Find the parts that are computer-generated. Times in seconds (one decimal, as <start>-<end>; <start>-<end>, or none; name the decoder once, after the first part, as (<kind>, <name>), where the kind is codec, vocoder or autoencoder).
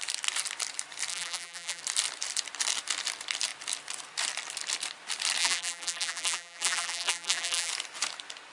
1.1-1.8 (vocoder, BigVGAN v2); 5.4-7.7